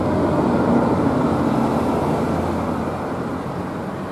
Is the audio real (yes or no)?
yes